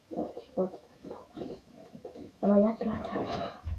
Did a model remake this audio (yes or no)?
yes